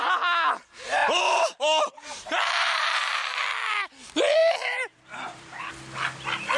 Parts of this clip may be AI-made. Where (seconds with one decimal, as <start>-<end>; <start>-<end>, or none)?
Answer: 1.0-3.7; 4.4-5.7